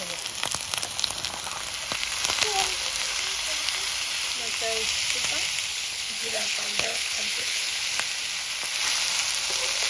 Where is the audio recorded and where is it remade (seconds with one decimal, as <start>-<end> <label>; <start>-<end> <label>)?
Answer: 0.0-5.7 recorded; 5.7-7.8 remade; 7.8-9.9 recorded